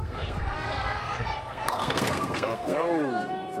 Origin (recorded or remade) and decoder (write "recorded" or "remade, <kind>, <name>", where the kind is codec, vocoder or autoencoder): remade, codec, SNAC